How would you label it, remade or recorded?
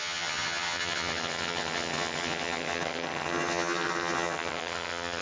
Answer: remade